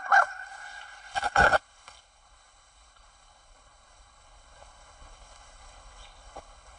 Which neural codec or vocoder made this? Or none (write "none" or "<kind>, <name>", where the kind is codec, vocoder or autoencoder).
codec, HILCodec